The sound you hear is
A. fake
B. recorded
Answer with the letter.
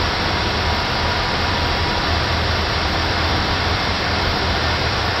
A